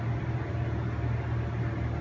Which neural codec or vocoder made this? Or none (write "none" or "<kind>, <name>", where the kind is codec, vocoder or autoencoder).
none